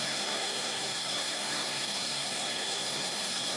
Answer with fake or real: fake